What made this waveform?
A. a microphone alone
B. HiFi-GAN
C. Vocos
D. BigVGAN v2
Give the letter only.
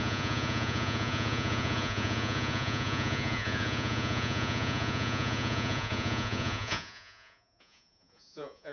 C